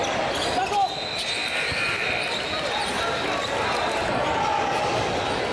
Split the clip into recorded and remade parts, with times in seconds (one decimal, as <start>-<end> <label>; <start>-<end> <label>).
0.0-5.5 recorded